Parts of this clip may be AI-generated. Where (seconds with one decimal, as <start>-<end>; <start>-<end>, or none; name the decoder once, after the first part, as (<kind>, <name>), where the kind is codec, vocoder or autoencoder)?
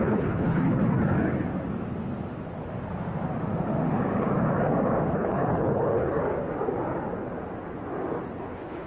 0.0-0.8 (codec, HILCodec); 5.1-6.2; 8.4-8.9